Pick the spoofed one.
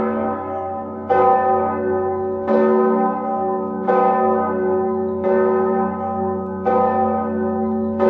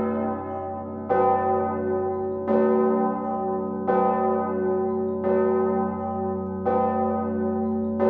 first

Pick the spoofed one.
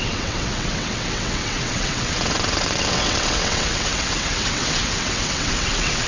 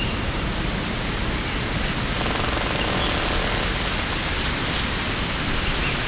first